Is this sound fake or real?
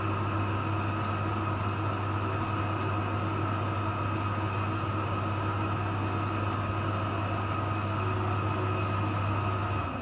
real